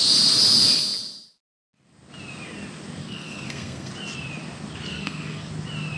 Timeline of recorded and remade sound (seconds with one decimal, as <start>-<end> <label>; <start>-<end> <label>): 0.0-3.0 recorded; 3.0-3.9 remade; 3.9-4.9 recorded; 4.9-5.5 remade; 5.5-6.0 recorded